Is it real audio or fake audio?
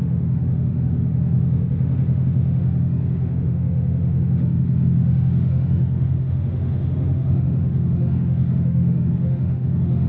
fake